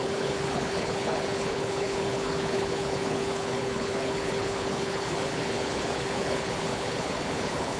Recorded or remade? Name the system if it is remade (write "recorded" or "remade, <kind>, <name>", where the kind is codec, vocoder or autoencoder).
remade, codec, HILCodec